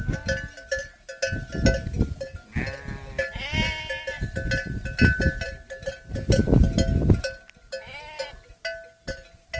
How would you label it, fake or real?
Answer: real